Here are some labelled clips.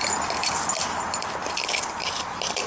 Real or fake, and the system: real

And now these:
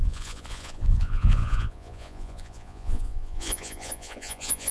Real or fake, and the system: fake, vocoder, Vocos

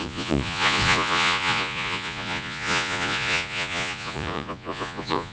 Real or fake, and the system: fake, vocoder, Vocos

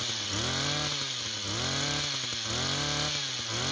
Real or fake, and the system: real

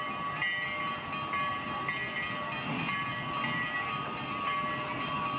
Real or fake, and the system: real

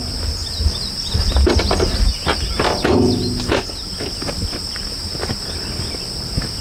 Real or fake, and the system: real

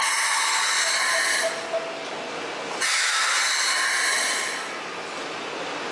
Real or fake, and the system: real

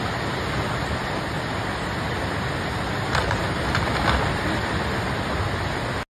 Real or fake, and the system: real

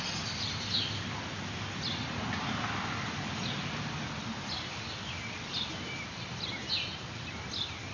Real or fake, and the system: real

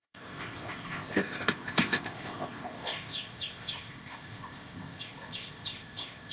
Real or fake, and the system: fake, codec, ZipCodec